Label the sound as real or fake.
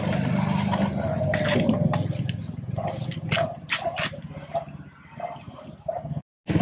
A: real